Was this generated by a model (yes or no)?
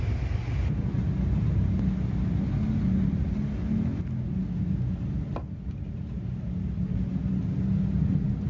no